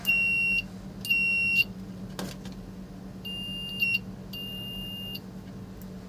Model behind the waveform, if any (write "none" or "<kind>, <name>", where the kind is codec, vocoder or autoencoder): none